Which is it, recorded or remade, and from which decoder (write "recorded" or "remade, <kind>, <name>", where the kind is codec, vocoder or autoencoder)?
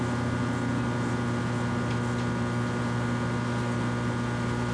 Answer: recorded